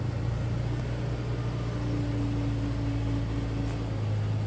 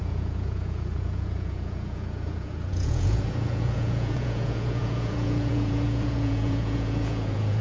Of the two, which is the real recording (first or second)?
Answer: first